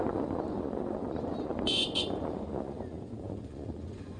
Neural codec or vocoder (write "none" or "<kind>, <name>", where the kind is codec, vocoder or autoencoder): vocoder, Vocos